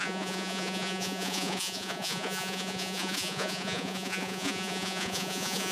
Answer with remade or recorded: remade